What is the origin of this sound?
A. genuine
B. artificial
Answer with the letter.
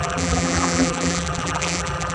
B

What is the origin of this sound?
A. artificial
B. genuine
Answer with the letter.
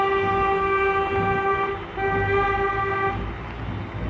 B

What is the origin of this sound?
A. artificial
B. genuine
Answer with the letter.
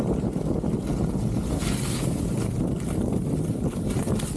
B